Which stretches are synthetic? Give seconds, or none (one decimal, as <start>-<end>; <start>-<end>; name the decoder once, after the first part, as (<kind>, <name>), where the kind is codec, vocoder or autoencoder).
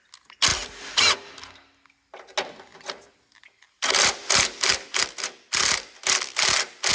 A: none